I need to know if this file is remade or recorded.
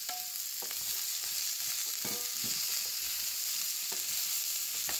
recorded